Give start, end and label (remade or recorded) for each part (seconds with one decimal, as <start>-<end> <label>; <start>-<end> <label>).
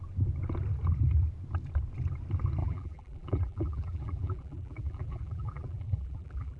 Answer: 0.0-2.6 recorded; 2.6-6.6 remade